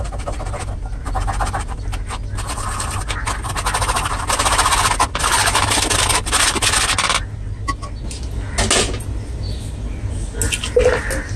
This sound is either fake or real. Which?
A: real